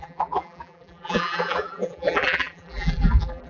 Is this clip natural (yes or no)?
no